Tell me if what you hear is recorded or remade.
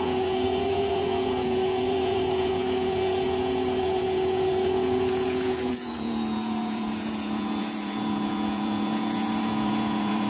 remade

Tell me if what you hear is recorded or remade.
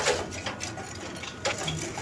recorded